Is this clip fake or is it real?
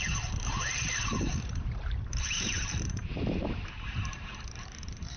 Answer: fake